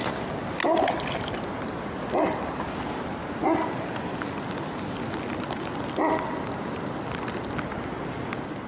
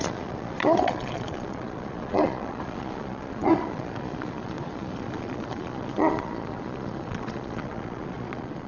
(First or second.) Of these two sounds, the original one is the first